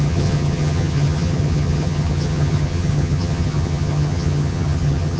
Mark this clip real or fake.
fake